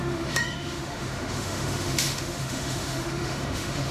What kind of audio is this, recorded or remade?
remade